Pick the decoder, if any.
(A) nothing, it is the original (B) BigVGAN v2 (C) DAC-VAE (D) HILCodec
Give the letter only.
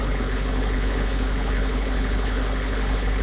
D